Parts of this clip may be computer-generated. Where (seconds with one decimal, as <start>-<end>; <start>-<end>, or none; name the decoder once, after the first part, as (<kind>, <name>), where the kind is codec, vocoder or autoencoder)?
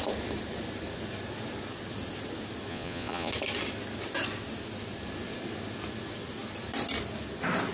2.7-3.3 (vocoder, Vocos)